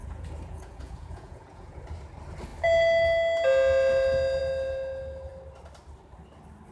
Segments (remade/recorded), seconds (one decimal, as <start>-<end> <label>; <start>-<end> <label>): 0.0-1.8 remade; 1.8-6.7 recorded